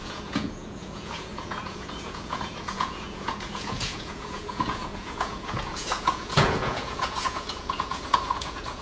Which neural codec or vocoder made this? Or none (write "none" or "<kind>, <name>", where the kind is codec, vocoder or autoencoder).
vocoder, Vocos